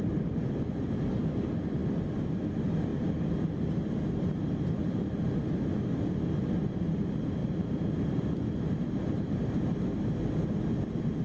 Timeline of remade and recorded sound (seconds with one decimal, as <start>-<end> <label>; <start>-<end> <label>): 0.0-2.9 recorded; 2.9-3.4 remade; 3.4-7.4 recorded; 7.4-8.5 remade; 8.5-11.2 recorded